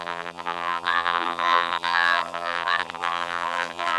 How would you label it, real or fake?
fake